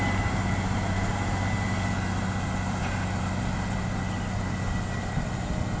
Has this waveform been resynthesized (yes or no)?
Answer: no